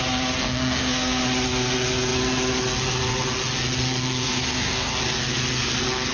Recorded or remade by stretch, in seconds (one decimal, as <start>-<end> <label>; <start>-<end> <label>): 0.0-0.4 recorded; 0.4-1.2 remade; 1.2-4.2 recorded; 4.2-4.9 remade; 4.9-6.1 recorded